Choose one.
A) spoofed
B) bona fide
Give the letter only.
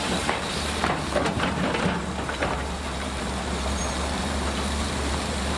A